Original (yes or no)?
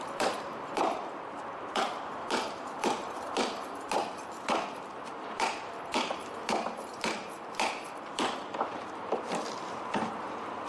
no